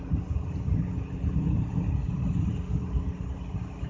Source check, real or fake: real